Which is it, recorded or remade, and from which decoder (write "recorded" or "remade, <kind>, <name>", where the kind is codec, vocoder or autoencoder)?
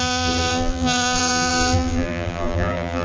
remade, vocoder, BigVGAN v2